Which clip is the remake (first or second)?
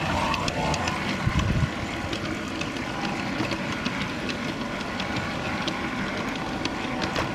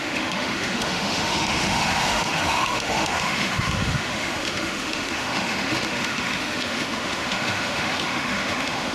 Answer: second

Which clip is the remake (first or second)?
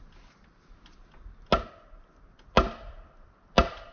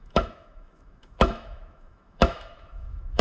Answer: second